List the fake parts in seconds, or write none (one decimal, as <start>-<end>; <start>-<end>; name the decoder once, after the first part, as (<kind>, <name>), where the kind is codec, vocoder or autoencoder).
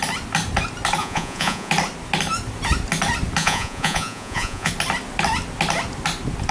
1.0-1.7 (vocoder, Vocos); 3.4-4.7